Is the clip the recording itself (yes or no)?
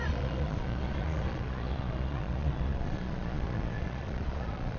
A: no